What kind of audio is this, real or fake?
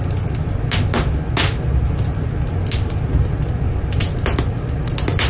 real